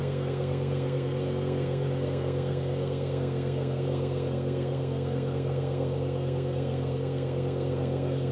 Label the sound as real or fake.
fake